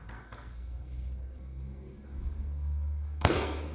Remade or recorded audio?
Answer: remade